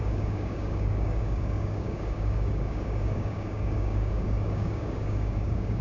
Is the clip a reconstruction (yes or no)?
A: yes